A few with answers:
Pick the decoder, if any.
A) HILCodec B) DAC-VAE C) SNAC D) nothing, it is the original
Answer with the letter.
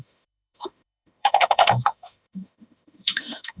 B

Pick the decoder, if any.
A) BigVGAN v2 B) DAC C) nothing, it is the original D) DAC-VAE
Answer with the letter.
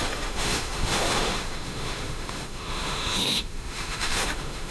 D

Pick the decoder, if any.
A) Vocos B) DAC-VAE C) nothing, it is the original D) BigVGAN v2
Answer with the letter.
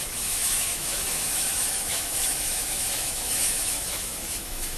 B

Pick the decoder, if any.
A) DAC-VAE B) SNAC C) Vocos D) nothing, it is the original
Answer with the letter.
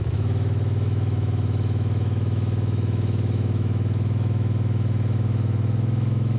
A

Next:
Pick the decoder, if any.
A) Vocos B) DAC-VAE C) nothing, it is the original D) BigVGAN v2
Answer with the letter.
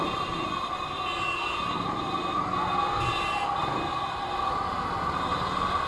C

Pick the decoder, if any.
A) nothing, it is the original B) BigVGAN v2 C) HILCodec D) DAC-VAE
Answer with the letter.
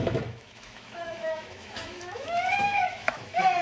D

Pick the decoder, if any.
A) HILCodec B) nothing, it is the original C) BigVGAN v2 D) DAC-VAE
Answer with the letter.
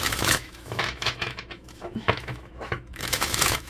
D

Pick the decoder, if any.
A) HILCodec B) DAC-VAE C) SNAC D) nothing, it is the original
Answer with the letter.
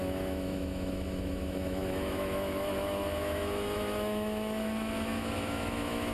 B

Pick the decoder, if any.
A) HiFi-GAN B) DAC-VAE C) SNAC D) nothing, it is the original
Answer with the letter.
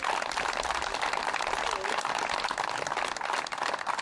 D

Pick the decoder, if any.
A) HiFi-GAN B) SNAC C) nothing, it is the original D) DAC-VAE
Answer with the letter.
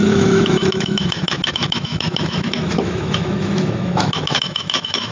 D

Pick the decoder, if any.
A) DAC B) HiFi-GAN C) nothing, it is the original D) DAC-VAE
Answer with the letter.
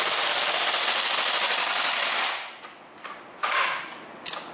C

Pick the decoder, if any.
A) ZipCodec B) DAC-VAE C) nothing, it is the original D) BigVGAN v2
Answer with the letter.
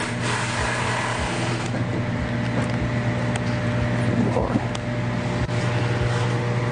C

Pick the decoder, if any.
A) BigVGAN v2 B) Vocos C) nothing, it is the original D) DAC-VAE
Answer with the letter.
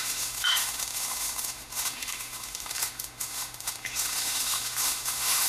D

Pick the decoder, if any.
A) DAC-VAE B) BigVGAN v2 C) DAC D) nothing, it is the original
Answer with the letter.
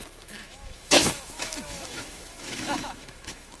A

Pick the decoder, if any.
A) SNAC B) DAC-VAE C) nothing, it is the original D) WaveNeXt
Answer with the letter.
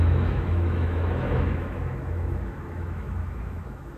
B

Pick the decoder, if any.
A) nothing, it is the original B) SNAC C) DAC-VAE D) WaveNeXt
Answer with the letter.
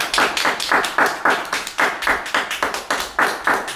A